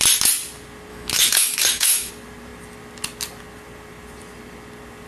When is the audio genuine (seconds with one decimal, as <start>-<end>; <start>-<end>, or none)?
0.0-0.9; 2.1-5.1

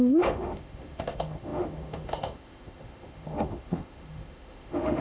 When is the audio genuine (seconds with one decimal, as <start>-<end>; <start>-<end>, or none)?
none

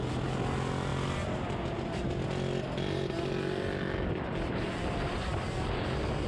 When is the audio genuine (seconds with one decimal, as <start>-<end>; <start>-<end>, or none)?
0.0-6.3

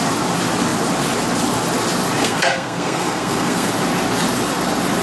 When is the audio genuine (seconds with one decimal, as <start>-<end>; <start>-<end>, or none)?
0.0-2.2; 3.7-5.0

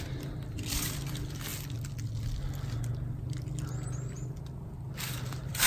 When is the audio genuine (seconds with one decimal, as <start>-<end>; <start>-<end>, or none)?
1.5-4.9

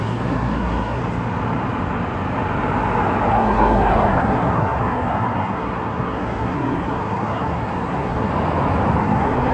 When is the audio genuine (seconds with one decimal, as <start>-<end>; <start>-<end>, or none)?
1.0-3.3; 8.3-9.0

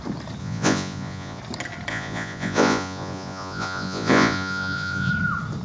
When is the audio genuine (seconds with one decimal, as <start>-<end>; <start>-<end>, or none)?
0.0-0.4; 1.4-1.9; 5.1-5.6